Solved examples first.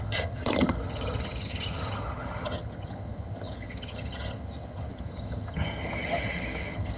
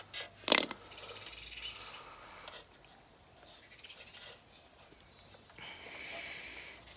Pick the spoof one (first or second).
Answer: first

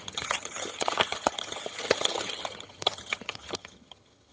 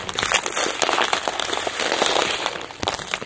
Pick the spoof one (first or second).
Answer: first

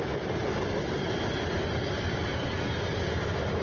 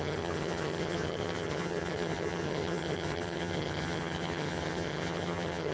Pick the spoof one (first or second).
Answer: second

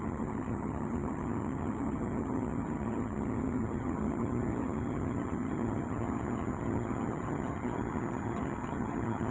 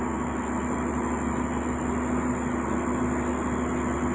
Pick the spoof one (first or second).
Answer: first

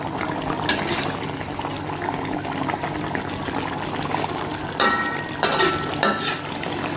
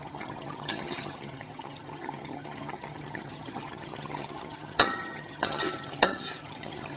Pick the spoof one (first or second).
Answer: second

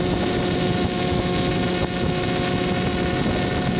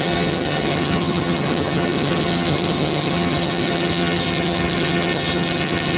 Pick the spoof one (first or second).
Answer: second